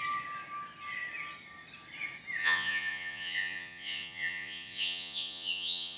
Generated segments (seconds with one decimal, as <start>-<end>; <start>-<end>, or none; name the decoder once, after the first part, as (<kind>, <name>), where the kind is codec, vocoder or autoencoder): 2.4-6.0 (vocoder, Vocos)